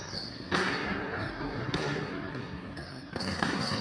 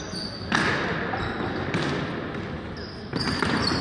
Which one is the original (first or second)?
second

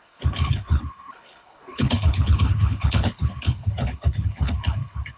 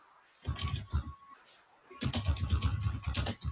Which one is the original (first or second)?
second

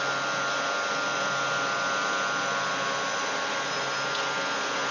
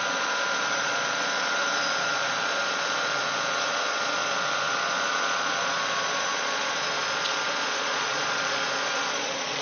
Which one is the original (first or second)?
first